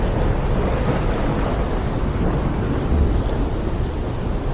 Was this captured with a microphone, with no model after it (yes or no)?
yes